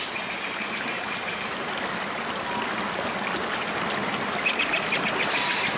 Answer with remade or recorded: recorded